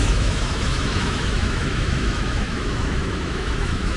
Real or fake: fake